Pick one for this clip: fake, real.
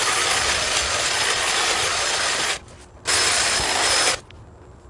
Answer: real